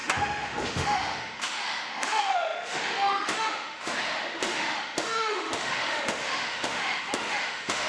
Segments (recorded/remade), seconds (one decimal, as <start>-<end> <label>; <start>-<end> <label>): 0.0-7.9 remade